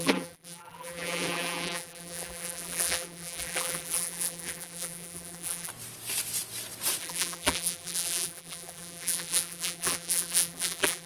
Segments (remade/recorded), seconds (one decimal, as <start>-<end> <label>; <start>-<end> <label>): 0.0-5.7 remade; 5.7-7.0 recorded; 7.0-11.1 remade